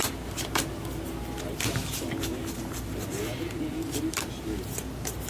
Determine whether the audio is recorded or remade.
recorded